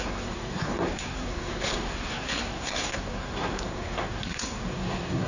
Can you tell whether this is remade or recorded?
remade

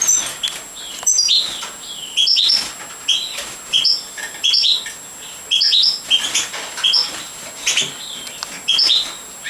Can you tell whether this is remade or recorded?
recorded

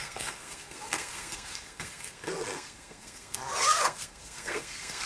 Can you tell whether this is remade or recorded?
remade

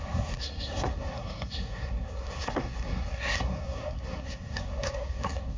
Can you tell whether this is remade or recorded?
remade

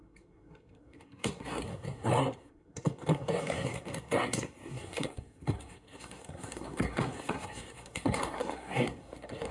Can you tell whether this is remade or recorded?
remade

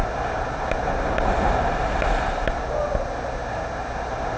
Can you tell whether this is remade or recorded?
recorded